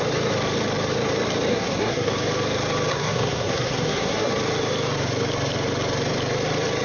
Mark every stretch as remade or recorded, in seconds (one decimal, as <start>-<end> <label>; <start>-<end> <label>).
0.0-1.5 recorded; 1.5-2.1 remade; 2.1-2.9 recorded; 2.9-4.3 remade; 4.3-6.8 recorded